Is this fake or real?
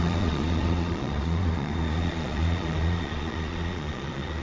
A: fake